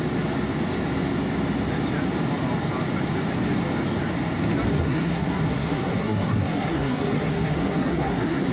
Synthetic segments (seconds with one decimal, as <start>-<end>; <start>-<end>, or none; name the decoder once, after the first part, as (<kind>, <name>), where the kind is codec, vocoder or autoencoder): 4.7-8.5 (codec, SNAC)